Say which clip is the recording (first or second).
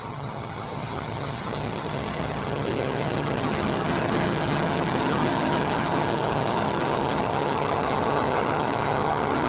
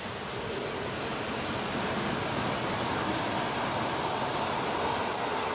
second